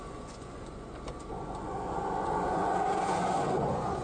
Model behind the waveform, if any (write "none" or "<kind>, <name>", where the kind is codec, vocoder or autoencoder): vocoder, Vocos